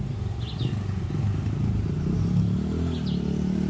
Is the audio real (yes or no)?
yes